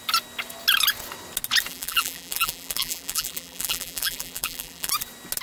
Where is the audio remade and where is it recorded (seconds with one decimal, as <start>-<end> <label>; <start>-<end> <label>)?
0.0-1.7 recorded; 1.7-4.9 remade; 4.9-5.4 recorded